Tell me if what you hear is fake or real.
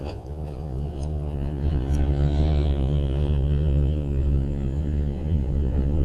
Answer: fake